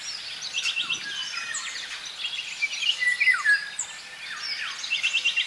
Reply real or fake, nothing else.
real